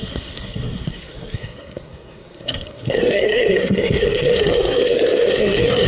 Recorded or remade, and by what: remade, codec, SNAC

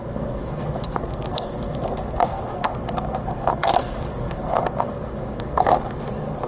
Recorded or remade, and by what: remade, codec, SNAC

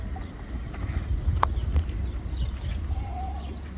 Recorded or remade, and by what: recorded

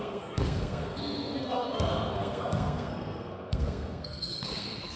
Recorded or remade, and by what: remade, codec, SNAC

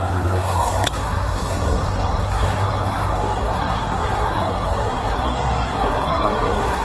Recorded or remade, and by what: remade, codec, SNAC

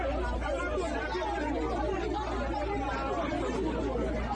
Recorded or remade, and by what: recorded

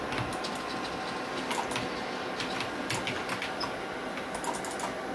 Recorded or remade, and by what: recorded